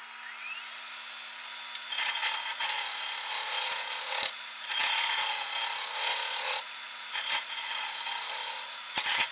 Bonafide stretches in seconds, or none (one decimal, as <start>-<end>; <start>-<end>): 0.0-1.9